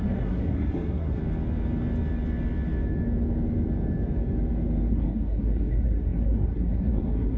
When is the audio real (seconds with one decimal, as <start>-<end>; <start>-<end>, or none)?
1.2-4.9